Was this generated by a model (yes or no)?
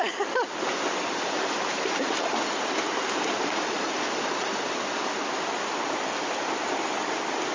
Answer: yes